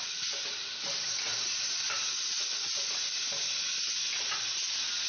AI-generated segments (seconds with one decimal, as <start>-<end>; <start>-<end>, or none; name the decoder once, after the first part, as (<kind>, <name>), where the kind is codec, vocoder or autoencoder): none

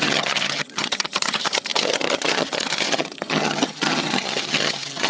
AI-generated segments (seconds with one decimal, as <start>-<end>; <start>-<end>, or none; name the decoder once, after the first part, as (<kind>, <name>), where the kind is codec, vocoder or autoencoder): 0.0-5.1 (vocoder, HiFi-GAN)

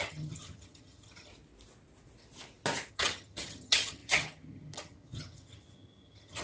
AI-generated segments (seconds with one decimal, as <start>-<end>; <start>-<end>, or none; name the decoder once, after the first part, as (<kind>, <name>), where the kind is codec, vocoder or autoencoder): 0.0-1.3 (vocoder, HiFi-GAN); 2.9-6.4